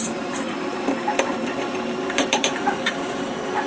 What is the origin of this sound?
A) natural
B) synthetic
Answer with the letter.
B